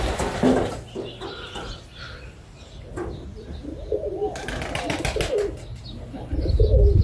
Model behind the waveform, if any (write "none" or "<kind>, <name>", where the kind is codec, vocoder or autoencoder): none